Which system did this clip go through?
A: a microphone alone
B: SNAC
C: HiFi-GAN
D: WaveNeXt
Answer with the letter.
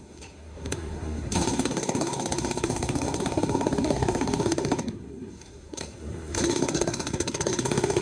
B